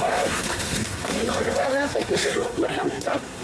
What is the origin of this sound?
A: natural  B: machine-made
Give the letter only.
B